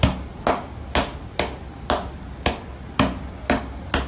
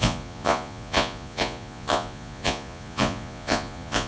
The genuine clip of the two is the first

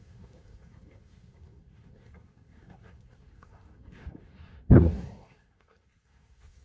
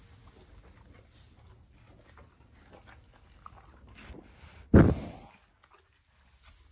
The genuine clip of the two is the second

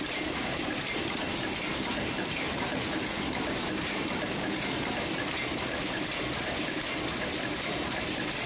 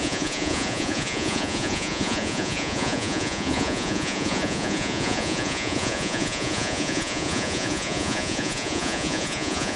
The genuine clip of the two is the first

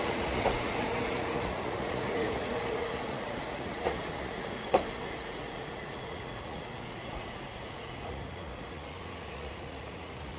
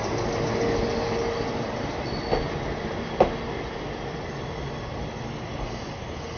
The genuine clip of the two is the second